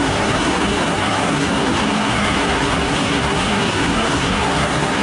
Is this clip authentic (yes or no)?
no